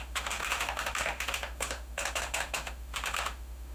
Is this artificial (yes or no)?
yes